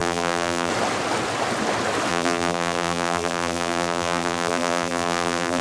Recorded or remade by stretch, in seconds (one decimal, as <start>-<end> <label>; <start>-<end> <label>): 0.0-0.7 remade; 0.7-2.1 recorded; 2.1-5.6 remade